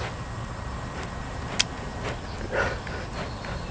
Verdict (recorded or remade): recorded